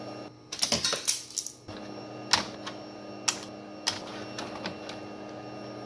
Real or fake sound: real